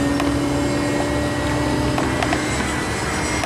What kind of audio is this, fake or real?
real